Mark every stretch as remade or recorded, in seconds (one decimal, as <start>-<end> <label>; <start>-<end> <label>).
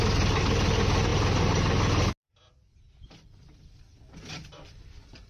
0.0-5.3 recorded